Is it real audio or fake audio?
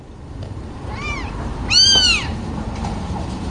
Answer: fake